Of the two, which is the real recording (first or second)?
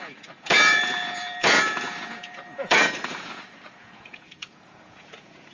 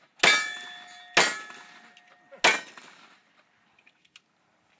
second